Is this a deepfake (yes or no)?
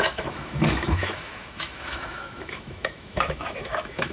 yes